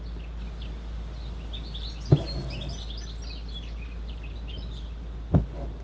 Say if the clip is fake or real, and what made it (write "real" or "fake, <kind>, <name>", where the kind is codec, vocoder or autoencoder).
real